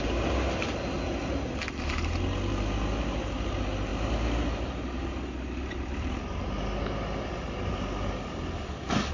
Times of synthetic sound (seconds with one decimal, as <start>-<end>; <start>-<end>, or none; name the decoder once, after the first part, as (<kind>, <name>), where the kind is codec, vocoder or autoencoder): none